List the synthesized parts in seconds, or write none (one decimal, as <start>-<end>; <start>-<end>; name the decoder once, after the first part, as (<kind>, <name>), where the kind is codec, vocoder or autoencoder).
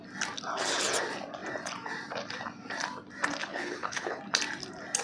3.4-4.2 (codec, HILCodec)